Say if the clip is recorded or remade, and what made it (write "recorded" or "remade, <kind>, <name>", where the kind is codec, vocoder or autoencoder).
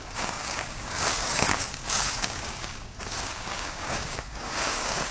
remade, codec, DAC